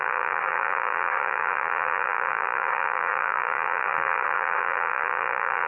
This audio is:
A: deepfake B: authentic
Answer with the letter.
A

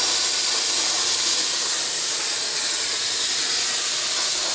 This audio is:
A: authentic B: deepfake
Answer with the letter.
A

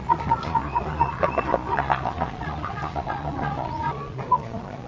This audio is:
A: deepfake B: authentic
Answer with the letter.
A